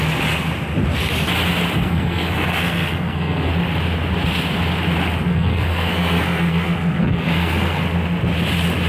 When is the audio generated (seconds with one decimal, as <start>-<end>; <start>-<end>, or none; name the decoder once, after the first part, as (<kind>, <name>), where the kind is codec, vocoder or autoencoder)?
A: 1.8-3.5 (codec, SNAC); 5.3-7.8